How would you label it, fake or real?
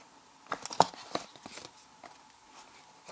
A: real